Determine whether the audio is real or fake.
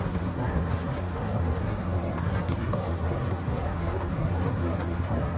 fake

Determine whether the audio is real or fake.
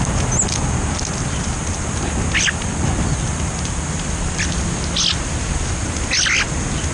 real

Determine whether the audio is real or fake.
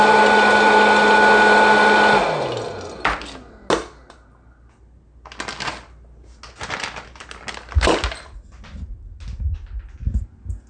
real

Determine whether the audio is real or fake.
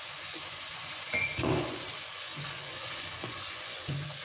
fake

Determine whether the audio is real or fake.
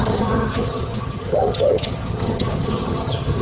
fake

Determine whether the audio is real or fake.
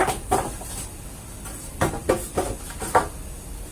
real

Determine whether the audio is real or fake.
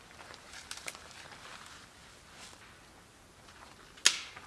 real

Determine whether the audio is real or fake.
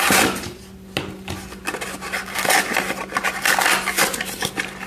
real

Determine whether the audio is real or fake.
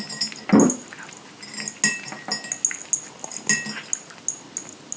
real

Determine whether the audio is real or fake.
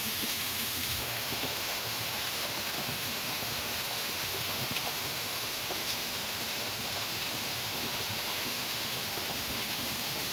fake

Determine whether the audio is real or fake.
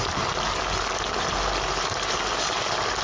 real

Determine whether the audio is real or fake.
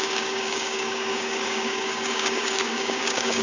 fake